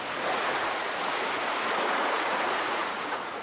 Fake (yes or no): yes